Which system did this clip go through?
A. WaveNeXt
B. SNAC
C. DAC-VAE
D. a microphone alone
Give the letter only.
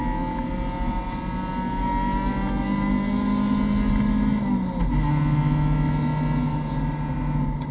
D